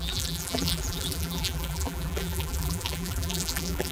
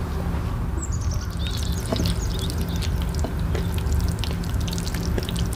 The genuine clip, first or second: second